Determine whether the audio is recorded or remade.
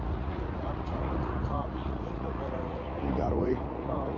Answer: remade